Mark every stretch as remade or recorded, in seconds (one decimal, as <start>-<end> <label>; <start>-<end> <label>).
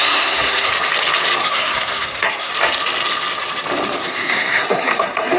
0.0-0.7 remade; 0.7-1.4 recorded; 1.4-2.5 remade; 2.5-4.0 recorded; 4.0-5.4 remade